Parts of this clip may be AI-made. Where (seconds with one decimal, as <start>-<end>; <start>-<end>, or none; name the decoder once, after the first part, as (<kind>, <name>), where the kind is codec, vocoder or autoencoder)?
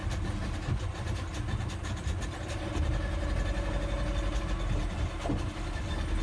none